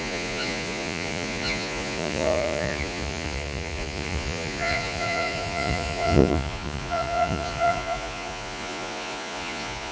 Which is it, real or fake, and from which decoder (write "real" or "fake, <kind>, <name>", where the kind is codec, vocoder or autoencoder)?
fake, vocoder, Vocos